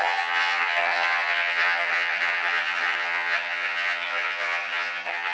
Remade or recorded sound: remade